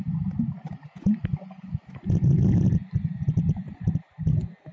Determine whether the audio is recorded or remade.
recorded